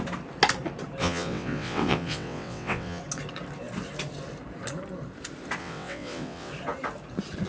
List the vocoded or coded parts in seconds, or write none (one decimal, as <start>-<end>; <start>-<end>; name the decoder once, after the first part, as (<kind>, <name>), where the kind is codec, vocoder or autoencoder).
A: 1.0-3.0 (vocoder, WaveNeXt); 5.6-6.5